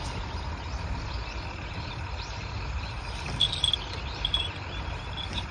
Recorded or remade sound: recorded